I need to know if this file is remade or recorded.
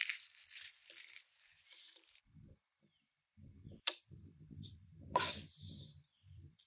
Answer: remade